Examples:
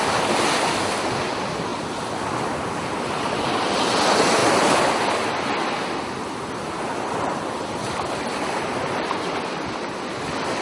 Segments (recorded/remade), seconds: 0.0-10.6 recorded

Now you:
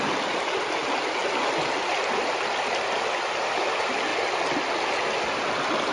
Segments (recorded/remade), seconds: 0.0-5.9 recorded

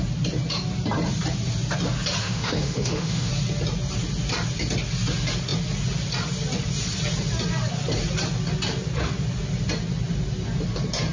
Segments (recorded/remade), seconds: 0.0-2.2 recorded; 2.2-3.3 remade; 3.3-11.1 recorded